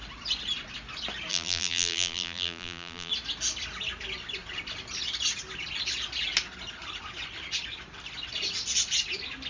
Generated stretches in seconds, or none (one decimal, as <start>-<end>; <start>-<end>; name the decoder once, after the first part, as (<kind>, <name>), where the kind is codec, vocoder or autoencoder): 1.3-3.1 (vocoder, BigVGAN v2)